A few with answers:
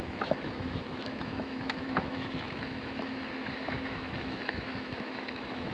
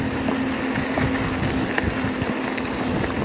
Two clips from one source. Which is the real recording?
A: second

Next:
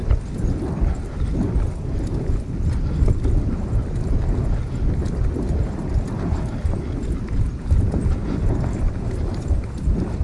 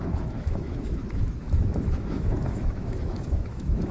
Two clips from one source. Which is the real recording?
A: first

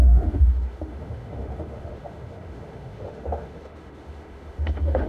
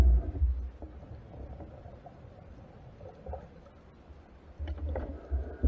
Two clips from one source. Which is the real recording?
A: second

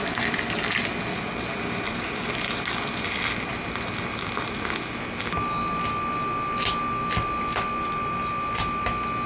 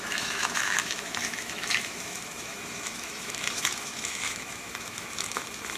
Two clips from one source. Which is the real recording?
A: first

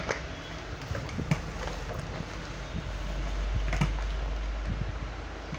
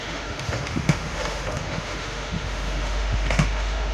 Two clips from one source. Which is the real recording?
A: first